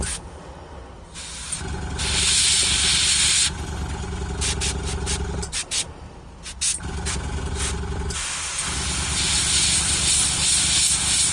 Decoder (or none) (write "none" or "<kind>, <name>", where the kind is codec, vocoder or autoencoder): none